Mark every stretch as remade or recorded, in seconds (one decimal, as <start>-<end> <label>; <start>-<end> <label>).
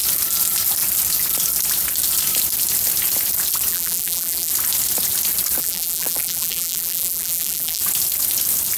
0.0-3.7 recorded; 3.7-4.5 remade; 4.5-5.6 recorded; 5.6-7.8 remade; 7.8-8.8 recorded